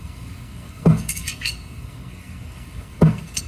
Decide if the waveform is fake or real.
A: fake